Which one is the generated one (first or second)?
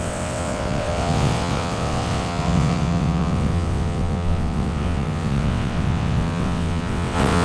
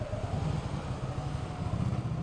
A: first